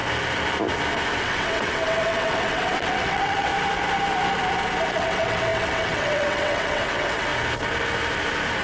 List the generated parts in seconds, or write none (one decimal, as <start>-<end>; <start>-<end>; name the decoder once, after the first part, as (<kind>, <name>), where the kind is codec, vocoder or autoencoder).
1.2-3.5 (vocoder, WaveNeXt); 4.9-7.3